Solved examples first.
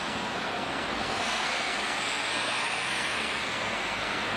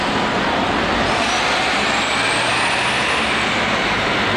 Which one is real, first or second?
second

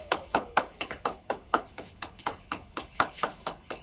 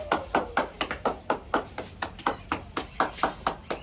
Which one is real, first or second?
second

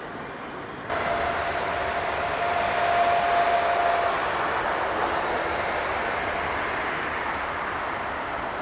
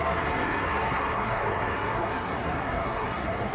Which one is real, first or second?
first